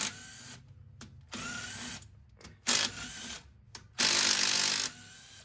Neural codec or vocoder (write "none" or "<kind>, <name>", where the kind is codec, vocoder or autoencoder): none